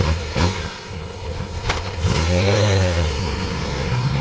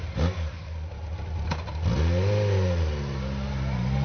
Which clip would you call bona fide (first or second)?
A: second